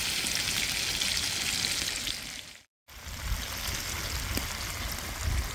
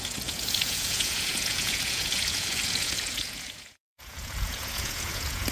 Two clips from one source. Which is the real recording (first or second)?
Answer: first